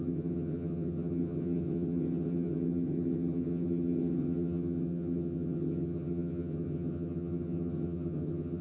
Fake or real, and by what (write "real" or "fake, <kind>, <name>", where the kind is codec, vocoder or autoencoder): fake, vocoder, HiFi-GAN